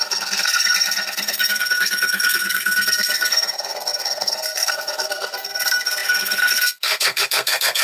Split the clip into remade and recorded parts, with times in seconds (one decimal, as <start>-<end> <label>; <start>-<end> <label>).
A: 0.0-7.8 remade